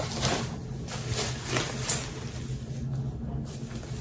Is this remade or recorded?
recorded